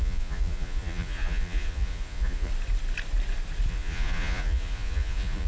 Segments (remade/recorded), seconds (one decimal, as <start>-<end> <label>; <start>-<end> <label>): 0.0-2.5 remade; 2.5-3.7 recorded; 3.7-5.5 remade